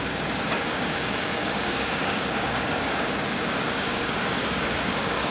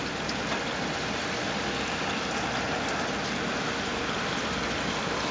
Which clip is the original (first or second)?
second